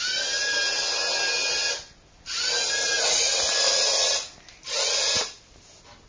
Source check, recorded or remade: recorded